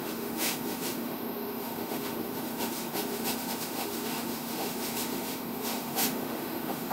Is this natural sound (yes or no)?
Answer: no